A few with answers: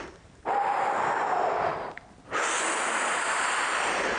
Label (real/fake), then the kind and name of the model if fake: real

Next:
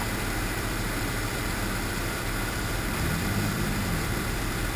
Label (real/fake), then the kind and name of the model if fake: fake, vocoder, BigVGAN v2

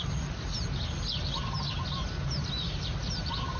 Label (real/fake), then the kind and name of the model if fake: real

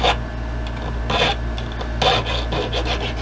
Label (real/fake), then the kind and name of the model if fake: real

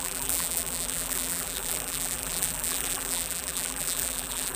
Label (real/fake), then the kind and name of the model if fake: fake, vocoder, BigVGAN v2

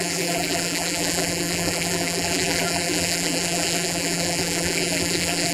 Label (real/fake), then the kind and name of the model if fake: fake, vocoder, BigVGAN v2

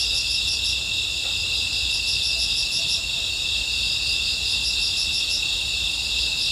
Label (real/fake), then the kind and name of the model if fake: real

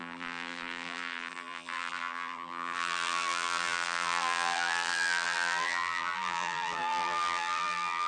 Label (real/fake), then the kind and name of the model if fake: fake, vocoder, BigVGAN v2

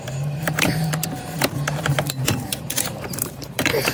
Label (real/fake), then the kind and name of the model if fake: fake, vocoder, BigVGAN v2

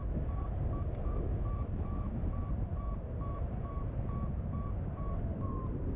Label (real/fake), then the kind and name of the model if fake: real